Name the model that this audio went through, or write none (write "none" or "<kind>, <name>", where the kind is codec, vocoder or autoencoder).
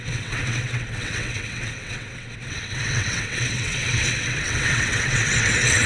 vocoder, WaveNeXt